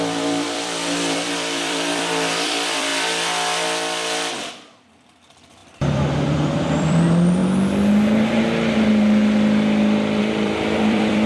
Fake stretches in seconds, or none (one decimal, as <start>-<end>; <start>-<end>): 0.0-2.9; 4.5-7.4; 10.2-11.3